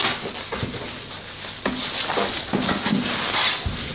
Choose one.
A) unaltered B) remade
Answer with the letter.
A